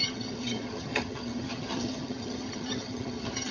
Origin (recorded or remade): remade